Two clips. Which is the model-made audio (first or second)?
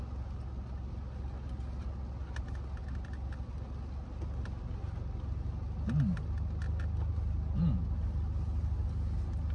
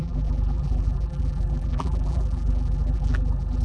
second